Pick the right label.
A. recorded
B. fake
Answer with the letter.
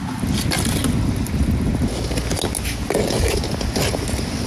A